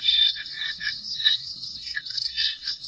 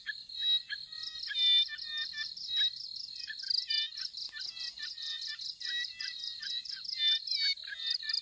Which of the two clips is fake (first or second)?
first